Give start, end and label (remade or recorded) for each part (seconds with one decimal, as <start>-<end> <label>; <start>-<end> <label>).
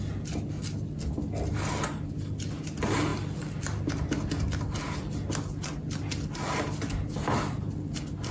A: 0.0-8.3 recorded